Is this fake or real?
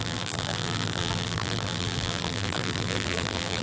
fake